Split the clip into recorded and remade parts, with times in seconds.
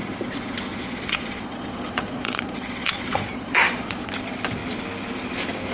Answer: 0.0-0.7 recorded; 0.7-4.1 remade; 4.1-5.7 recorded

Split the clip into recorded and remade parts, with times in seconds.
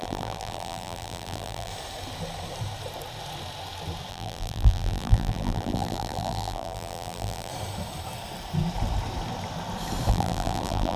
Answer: 0.0-1.7 remade; 1.7-4.1 recorded; 4.1-7.5 remade; 7.5-10.1 recorded; 10.1-11.0 remade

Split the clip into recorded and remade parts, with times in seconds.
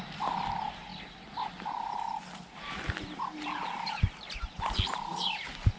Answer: 0.0-5.8 recorded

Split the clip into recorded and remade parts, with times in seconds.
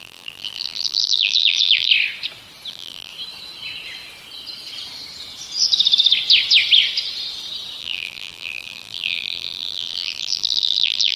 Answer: 0.0-1.9 remade; 1.9-2.7 recorded; 2.7-3.1 remade; 3.1-7.8 recorded; 7.8-11.2 remade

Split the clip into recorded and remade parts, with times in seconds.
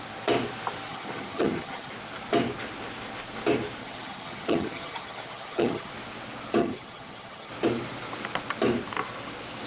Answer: 0.0-0.9 recorded; 0.9-1.9 remade; 1.9-3.8 recorded; 3.8-5.9 remade; 5.9-6.6 recorded; 6.6-7.5 remade; 7.5-9.7 recorded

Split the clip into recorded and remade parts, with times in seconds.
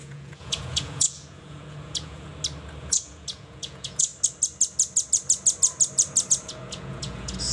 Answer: 0.0-2.3 remade; 2.3-2.8 recorded; 2.8-4.1 remade; 4.1-6.3 recorded; 6.3-7.5 remade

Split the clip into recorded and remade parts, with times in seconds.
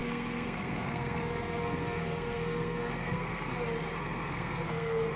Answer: 0.0-3.5 remade; 3.5-4.0 recorded; 4.0-5.2 remade